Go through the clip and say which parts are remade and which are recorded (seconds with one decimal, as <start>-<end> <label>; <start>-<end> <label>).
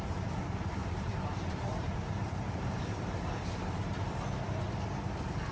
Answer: 0.0-0.8 recorded; 0.8-3.0 remade; 3.0-5.5 recorded